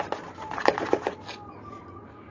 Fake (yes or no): no